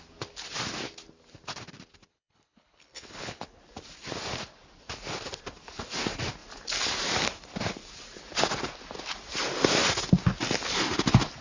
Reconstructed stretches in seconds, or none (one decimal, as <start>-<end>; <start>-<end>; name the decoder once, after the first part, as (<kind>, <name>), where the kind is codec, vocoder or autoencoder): 2.1-3.6 (codec, HILCodec)